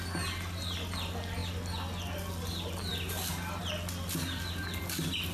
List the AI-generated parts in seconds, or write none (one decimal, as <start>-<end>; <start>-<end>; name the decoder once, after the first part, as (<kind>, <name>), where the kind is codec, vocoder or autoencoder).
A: none